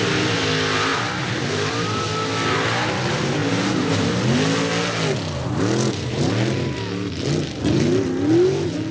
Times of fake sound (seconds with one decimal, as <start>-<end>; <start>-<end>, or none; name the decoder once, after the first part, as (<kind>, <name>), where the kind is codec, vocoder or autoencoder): none